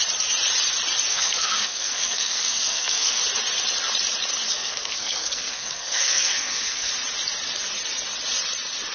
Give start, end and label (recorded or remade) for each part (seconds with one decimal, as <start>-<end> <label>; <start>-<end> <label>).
0.0-1.1 recorded; 1.1-3.2 remade; 3.2-4.5 recorded; 4.5-6.9 remade; 6.9-8.9 recorded